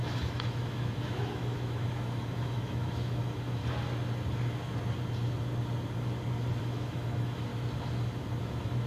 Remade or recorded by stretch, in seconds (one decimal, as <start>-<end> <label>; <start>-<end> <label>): 0.0-3.6 remade; 3.6-6.6 recorded; 6.6-7.5 remade; 7.5-8.4 recorded; 8.4-8.9 remade